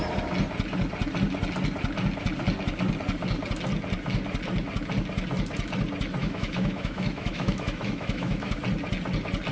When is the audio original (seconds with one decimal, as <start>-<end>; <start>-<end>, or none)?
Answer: 0.0-6.2; 8.6-9.5